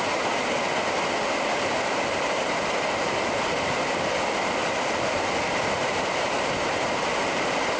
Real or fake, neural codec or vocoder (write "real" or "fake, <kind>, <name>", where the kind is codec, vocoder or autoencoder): real